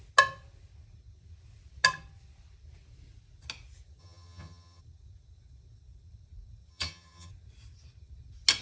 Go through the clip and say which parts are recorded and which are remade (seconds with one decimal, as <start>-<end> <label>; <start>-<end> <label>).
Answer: 0.0-4.0 recorded; 4.0-4.8 remade; 4.8-6.7 recorded; 6.7-7.3 remade; 7.3-8.6 recorded

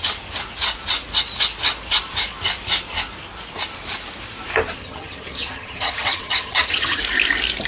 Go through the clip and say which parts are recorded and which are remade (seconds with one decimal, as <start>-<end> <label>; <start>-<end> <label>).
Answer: 0.0-4.8 recorded; 4.8-7.0 remade; 7.0-7.7 recorded

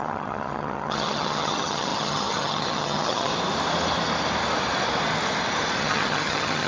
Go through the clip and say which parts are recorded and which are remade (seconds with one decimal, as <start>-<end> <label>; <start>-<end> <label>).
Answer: 0.0-3.3 remade; 3.3-5.8 recorded; 5.8-6.7 remade

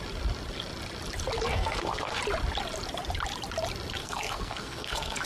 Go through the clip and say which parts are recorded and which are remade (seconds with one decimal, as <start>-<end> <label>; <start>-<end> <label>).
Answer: 0.0-1.5 recorded; 1.5-2.2 remade; 2.2-4.0 recorded; 4.0-5.3 remade

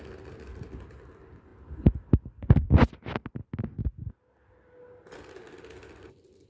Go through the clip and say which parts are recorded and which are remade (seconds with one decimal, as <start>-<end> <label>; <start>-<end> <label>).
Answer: 0.0-6.5 recorded

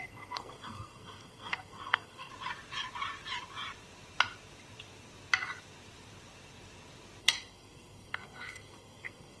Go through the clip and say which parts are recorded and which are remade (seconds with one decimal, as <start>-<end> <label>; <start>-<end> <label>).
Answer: 0.0-2.3 remade; 2.3-7.2 recorded; 7.2-9.4 remade

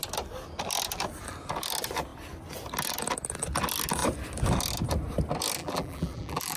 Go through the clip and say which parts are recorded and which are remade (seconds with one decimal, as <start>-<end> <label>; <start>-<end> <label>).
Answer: 0.0-5.6 recorded; 5.6-6.6 remade